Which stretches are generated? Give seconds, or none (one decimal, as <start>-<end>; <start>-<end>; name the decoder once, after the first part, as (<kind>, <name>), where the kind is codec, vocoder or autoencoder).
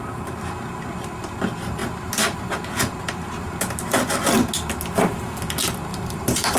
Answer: 1.8-3.5 (vocoder, BigVGAN v2); 5.9-6.6